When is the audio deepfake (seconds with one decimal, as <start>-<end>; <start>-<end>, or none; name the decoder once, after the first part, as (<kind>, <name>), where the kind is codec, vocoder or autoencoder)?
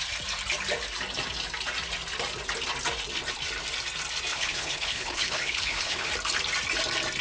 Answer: 4.3-6.1 (codec, HILCodec)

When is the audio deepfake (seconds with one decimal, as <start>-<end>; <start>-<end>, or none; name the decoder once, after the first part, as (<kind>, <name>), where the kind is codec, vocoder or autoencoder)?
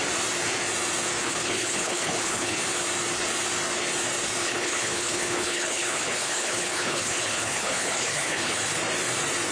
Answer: 1.2-2.6 (codec, HILCodec); 4.4-8.6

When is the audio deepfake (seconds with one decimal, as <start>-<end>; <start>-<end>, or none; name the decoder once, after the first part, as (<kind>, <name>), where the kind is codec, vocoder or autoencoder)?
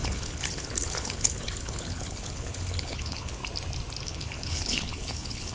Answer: 0.0-3.4 (codec, HILCodec); 4.0-5.5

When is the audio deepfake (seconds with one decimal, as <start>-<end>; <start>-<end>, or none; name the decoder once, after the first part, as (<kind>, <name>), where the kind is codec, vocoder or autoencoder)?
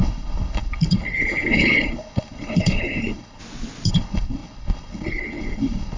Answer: 0.0-3.4 (codec, HILCodec); 3.9-6.0